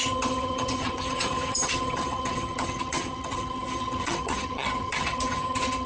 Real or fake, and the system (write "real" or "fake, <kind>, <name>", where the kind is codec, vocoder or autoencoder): fake, vocoder, HiFi-GAN